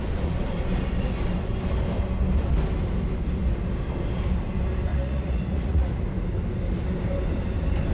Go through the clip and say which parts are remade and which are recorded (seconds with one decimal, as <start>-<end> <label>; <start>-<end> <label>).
0.0-4.9 recorded; 4.9-5.9 remade; 5.9-7.9 recorded